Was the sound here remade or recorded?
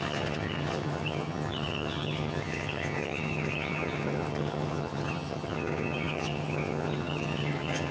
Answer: remade